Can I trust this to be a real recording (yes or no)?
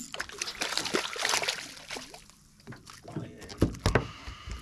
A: yes